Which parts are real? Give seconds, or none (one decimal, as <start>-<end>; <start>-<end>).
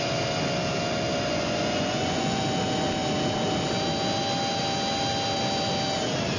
0.0-1.3; 2.4-6.4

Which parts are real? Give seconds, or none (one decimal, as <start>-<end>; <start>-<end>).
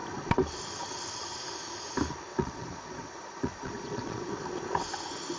0.0-2.3; 4.3-5.4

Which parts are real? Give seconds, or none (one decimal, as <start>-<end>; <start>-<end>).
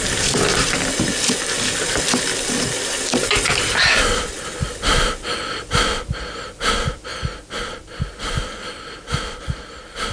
0.0-10.1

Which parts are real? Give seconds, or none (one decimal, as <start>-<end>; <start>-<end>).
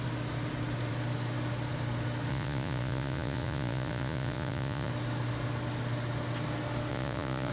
0.0-2.3; 4.9-6.9